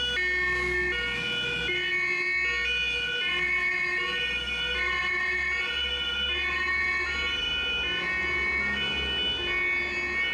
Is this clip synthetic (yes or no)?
no